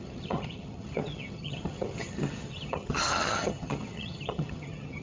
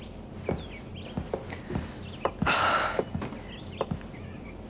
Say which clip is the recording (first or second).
second